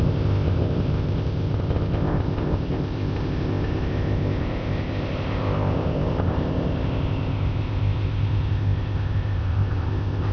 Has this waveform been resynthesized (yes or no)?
yes